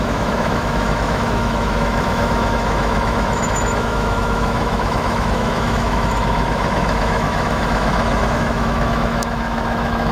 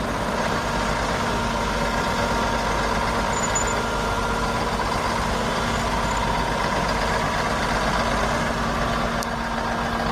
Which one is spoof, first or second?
first